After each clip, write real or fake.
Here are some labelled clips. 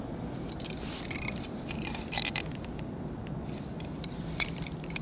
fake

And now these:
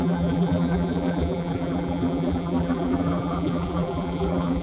fake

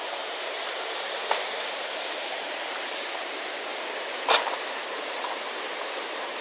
fake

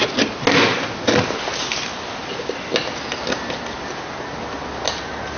real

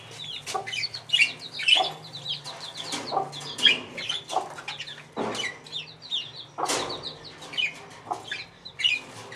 real